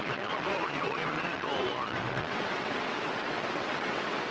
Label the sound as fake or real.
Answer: fake